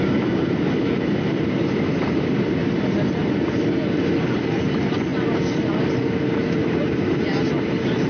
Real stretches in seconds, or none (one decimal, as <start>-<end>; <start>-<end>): none